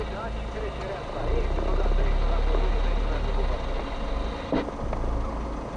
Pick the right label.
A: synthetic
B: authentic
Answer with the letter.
B